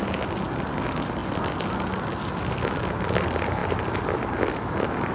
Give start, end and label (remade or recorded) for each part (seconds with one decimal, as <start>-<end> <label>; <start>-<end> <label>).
0.0-5.1 recorded